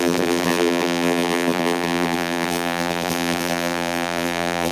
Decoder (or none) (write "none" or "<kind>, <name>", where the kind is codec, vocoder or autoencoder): vocoder, BigVGAN v2